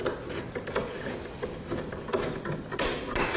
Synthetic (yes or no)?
no